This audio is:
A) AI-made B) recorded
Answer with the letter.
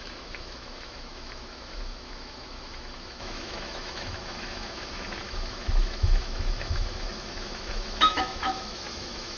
A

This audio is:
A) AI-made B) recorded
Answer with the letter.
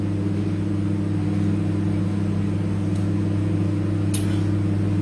B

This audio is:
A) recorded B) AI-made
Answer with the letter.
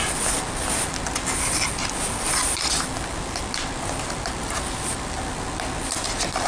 A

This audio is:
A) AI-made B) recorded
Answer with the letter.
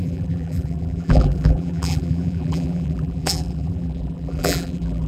A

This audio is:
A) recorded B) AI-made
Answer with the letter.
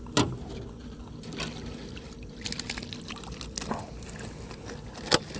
A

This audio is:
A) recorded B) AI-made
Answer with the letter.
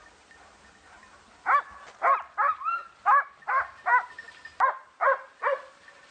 A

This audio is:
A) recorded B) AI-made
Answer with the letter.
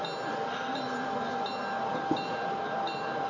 A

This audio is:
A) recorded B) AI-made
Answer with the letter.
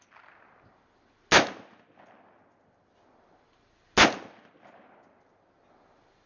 A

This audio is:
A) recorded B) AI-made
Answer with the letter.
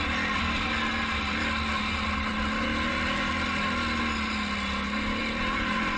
A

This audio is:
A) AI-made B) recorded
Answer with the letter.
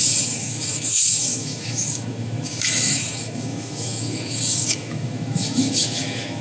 A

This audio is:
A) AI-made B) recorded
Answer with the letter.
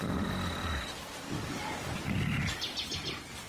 B